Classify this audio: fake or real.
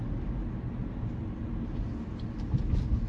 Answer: real